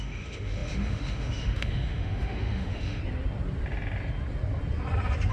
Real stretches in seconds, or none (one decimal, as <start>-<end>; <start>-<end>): 3.0-5.3